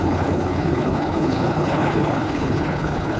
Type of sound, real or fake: fake